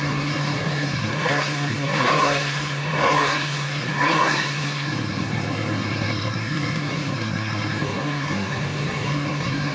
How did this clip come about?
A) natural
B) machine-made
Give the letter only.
B